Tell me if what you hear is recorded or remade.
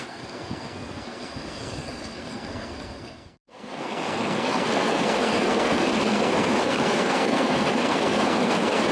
remade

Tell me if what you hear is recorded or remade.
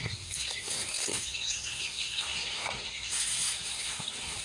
remade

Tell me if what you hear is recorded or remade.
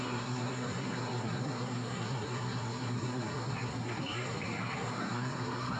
remade